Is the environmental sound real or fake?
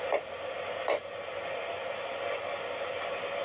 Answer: real